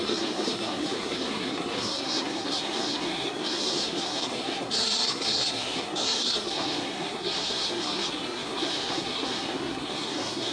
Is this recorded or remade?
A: remade